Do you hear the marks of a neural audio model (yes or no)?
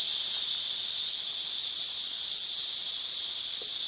no